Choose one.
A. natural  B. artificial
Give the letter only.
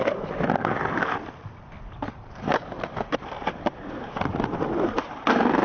A